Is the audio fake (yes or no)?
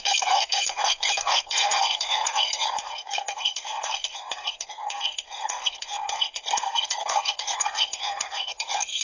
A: yes